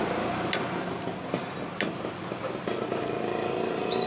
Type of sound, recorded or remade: recorded